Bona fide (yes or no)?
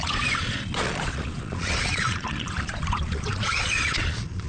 no